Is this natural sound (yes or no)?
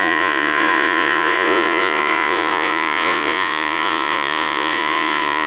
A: no